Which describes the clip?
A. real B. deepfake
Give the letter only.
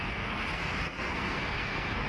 B